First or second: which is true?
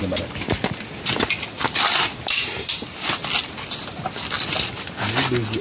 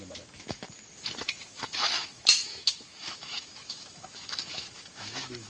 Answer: first